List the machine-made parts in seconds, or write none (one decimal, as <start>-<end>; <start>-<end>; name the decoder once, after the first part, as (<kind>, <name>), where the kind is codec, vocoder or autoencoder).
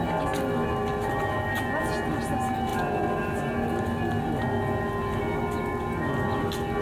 none